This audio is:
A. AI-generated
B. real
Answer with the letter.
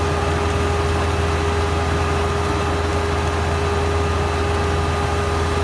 B